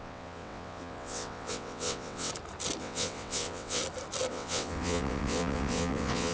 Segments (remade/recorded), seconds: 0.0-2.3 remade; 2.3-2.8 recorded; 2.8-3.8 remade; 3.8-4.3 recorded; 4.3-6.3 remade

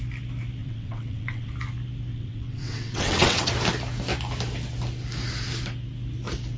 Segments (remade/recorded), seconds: 0.0-0.6 recorded; 0.6-1.5 remade; 1.5-2.1 recorded; 2.1-3.5 remade; 3.5-6.6 recorded

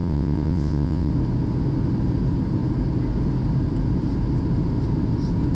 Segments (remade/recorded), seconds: 0.0-1.1 remade; 1.1-5.5 recorded

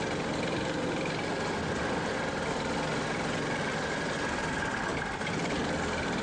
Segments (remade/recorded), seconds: 0.0-6.2 recorded

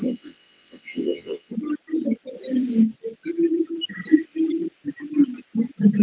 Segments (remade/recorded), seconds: 0.0-1.5 remade; 1.5-6.0 recorded

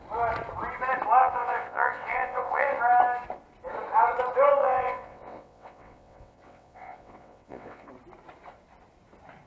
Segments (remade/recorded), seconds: 0.0-1.2 recorded; 1.2-2.8 remade; 2.8-4.6 recorded; 4.6-7.9 remade; 7.9-9.5 recorded